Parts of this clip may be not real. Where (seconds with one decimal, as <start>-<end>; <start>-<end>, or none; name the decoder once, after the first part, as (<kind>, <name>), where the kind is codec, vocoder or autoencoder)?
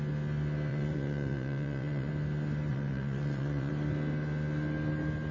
0.7-2.1 (vocoder, Vocos); 2.7-3.7